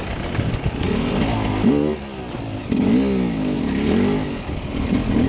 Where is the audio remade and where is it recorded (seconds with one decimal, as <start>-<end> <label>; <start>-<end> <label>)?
0.0-5.3 recorded